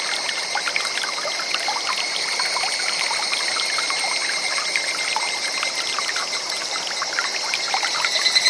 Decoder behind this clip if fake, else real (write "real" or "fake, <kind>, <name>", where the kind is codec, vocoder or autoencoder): real